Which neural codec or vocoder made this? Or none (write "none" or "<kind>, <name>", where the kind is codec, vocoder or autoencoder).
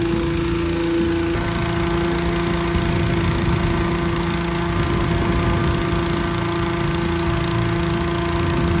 none